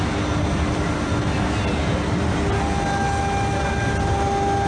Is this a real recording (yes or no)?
yes